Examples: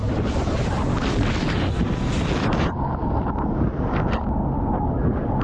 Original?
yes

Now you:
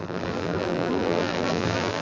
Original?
no